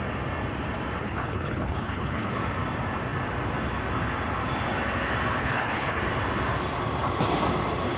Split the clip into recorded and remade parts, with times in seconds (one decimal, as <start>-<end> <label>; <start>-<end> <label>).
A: 0.0-1.0 recorded; 1.0-2.3 remade; 2.3-5.4 recorded; 5.4-6.0 remade; 6.0-8.0 recorded